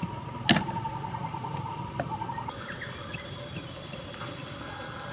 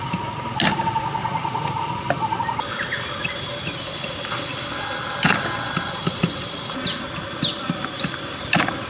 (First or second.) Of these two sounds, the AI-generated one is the first